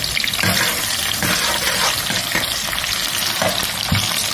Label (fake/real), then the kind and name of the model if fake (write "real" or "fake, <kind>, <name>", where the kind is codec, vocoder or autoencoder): fake, vocoder, BigVGAN v2